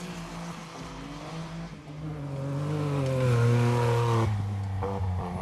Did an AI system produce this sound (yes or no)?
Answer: no